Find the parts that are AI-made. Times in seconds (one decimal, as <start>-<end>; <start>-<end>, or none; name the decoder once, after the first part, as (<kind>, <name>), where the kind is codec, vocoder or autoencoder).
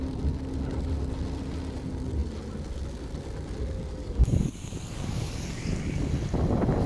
4.0-6.1 (codec, DAC)